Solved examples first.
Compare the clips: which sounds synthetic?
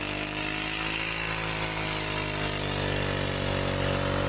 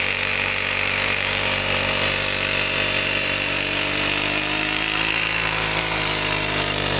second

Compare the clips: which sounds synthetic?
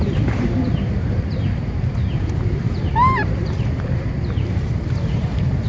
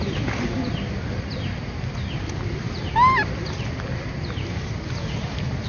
first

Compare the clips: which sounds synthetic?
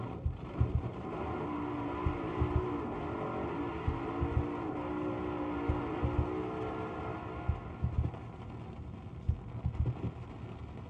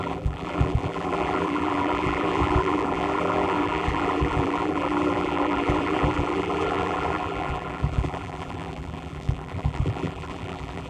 second